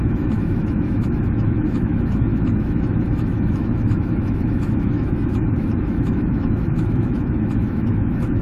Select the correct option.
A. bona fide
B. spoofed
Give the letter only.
B